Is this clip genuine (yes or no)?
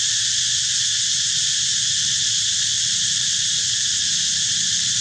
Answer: no